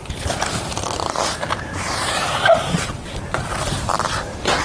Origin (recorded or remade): remade